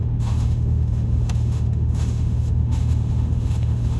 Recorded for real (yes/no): no